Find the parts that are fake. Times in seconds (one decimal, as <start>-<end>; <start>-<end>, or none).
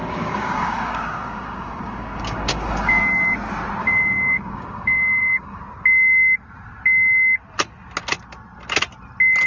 0.0-3.0; 3.8-5.6